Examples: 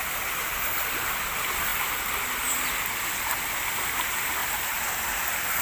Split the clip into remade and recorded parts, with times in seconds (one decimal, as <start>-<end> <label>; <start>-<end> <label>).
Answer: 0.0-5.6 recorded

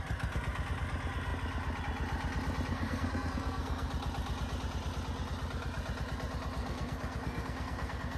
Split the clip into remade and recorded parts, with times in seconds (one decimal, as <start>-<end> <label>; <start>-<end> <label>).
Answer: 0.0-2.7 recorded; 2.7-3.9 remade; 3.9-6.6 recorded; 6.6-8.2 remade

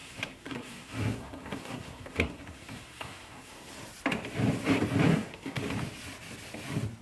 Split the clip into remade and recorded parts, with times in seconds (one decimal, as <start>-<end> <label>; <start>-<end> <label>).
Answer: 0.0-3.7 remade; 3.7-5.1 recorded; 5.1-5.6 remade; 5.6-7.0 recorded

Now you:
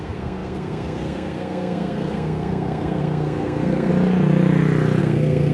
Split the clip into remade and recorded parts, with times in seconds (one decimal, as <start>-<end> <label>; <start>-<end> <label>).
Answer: 0.0-3.9 remade; 3.9-5.0 recorded; 5.0-5.5 remade